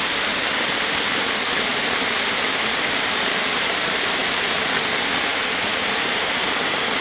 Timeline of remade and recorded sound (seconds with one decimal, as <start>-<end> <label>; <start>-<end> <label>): 0.0-1.7 recorded; 1.7-4.7 remade; 4.7-5.3 recorded; 5.3-6.4 remade; 6.4-7.0 recorded